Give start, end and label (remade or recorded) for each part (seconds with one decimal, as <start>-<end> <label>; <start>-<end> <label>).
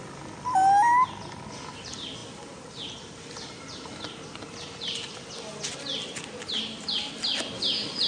0.0-8.1 recorded